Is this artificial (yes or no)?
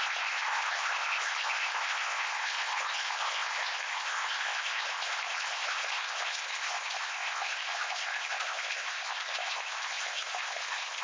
yes